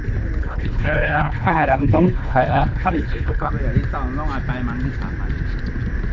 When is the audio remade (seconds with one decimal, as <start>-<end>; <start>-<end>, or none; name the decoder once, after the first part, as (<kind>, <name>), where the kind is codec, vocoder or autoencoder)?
0.4-3.5 (codec, HILCodec)